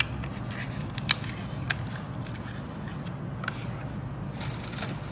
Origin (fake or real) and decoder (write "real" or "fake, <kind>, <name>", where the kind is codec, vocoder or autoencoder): real